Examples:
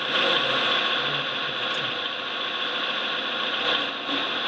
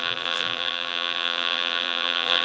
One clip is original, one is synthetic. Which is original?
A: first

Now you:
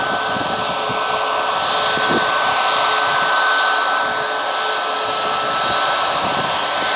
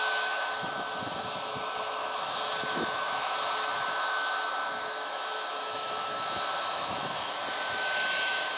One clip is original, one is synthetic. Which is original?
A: first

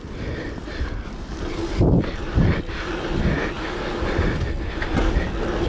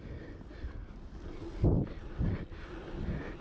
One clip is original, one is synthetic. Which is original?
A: first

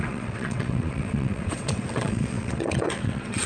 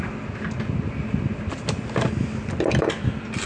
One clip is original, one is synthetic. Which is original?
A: second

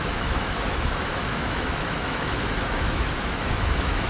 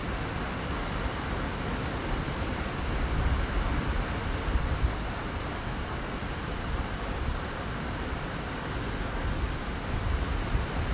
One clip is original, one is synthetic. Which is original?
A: second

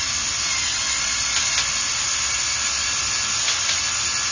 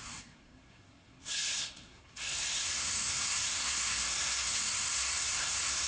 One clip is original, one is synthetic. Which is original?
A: first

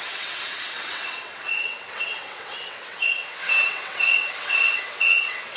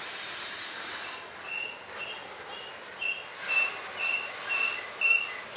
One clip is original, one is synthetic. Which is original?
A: second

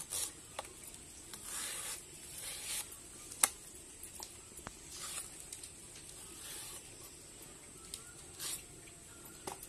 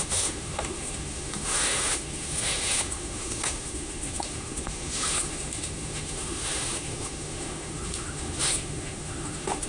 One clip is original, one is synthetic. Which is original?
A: first